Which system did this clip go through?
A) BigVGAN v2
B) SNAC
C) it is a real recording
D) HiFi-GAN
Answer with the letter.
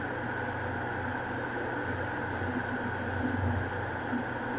C